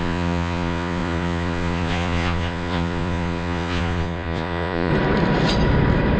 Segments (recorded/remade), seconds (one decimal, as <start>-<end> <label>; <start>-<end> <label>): 0.0-4.9 remade; 4.9-6.2 recorded